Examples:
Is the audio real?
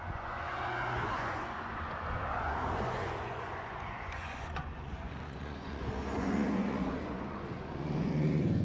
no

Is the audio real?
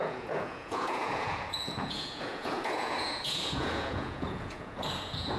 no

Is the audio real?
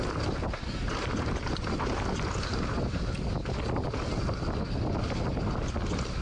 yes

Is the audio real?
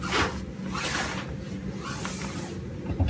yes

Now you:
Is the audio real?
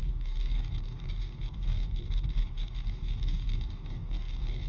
no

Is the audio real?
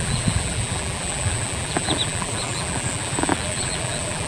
no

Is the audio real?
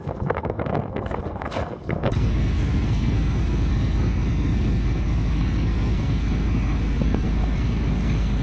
no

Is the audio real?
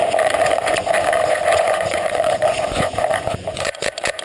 no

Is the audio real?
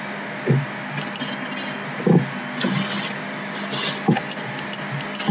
yes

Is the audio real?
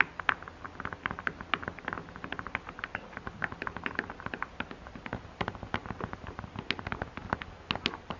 yes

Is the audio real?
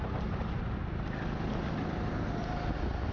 yes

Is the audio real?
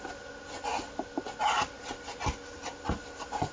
yes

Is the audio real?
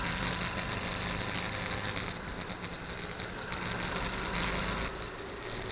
yes